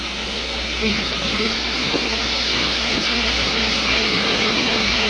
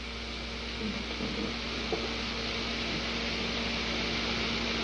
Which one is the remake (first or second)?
first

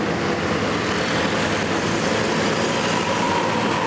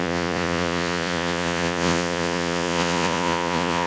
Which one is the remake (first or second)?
second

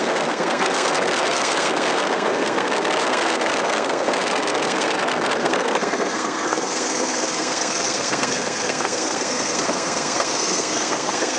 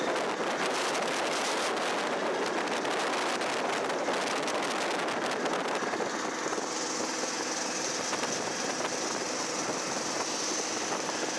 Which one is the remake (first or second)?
first